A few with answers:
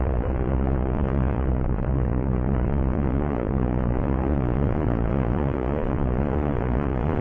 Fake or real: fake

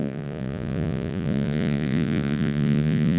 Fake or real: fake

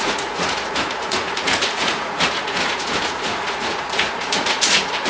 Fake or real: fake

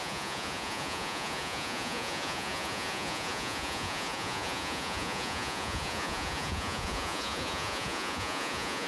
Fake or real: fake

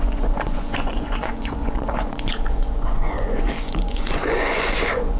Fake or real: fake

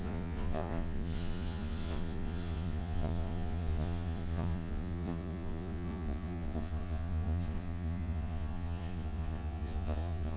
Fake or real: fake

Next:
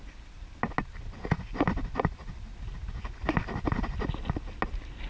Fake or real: real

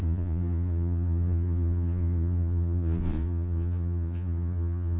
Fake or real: fake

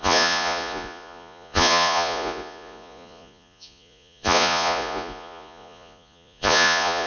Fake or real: fake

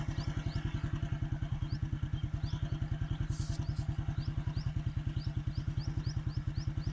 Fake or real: real